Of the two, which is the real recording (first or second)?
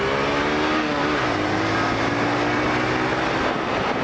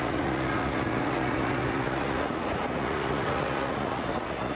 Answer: first